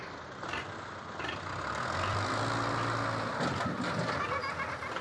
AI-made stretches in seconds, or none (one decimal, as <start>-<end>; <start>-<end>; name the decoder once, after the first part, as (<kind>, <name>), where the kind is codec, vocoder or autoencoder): 2.1-3.7 (vocoder, BigVGAN v2)